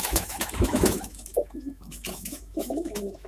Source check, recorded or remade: remade